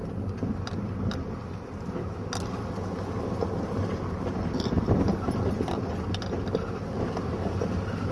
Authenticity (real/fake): real